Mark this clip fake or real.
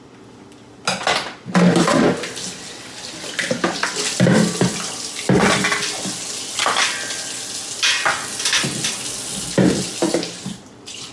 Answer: real